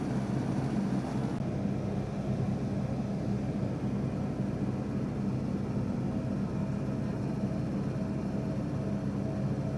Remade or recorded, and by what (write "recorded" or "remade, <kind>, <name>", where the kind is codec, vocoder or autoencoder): recorded